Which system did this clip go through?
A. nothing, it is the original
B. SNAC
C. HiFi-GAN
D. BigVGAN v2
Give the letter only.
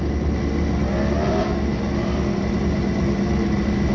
A